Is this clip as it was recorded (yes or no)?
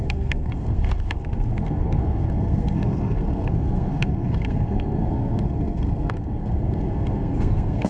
no